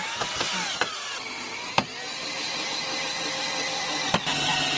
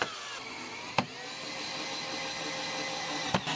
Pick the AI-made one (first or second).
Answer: first